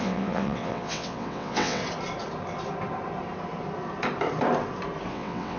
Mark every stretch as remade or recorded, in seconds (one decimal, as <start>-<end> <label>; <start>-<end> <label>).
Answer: 0.0-1.8 remade; 1.8-5.1 recorded; 5.1-5.6 remade